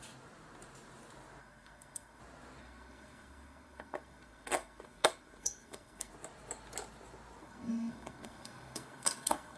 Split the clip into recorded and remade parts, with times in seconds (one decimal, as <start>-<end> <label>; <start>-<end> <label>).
0.0-1.4 recorded; 1.4-2.2 remade; 2.2-2.6 recorded; 2.6-6.1 remade; 6.1-7.4 recorded; 7.4-9.6 remade